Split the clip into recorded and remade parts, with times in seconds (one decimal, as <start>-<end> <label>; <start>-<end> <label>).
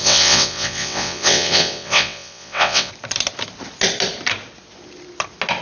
0.0-2.9 remade; 2.9-5.6 recorded